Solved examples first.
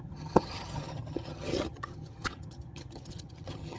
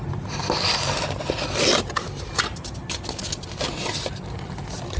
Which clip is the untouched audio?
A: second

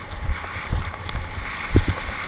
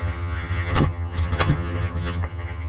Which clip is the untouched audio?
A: first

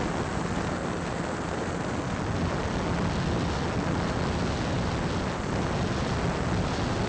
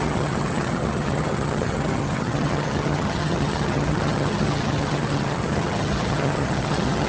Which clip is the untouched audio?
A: first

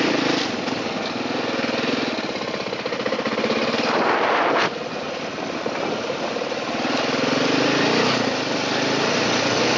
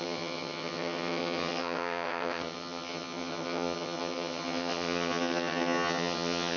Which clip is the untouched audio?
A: first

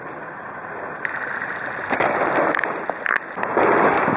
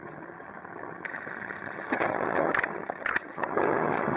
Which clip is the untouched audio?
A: first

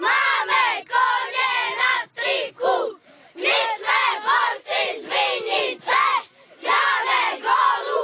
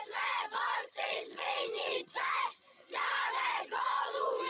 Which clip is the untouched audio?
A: first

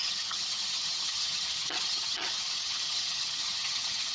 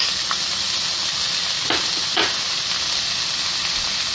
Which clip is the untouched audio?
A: second